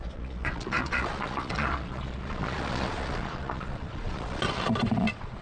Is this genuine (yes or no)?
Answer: no